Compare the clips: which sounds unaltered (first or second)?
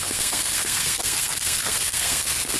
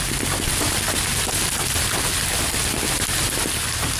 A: second